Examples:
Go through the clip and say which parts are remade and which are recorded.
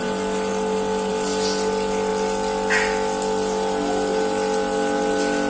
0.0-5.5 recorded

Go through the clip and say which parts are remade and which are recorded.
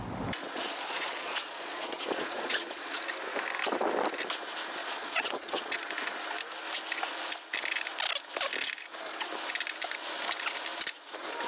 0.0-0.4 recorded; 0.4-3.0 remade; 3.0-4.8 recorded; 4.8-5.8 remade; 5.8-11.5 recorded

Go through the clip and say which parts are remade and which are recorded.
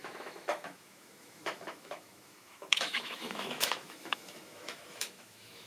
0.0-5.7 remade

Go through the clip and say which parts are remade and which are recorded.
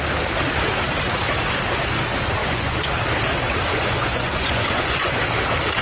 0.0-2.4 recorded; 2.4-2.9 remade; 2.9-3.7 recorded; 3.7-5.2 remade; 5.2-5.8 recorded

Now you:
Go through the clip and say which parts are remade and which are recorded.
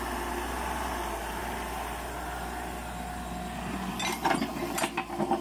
0.0-5.4 recorded